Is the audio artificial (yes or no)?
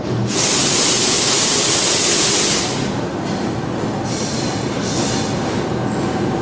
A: no